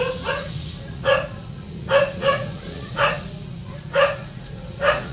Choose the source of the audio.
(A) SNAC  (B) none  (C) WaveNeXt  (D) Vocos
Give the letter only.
D